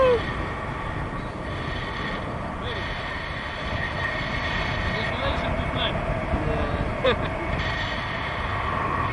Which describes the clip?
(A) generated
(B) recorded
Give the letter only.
B